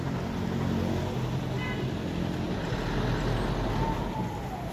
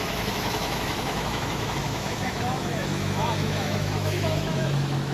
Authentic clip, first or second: first